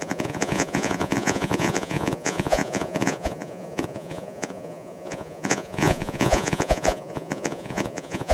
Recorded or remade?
remade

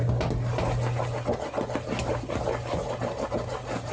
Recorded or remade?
recorded